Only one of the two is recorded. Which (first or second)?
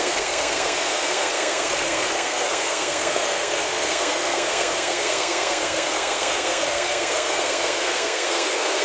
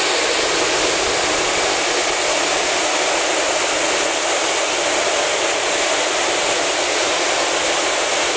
second